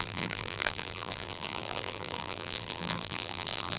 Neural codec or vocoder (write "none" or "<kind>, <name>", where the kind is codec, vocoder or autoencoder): vocoder, BigVGAN v2